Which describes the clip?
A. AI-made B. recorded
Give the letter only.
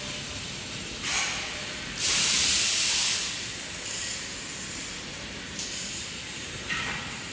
A